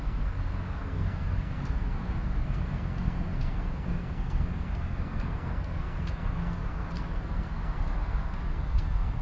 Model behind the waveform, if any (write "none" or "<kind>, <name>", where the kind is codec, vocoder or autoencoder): codec, SNAC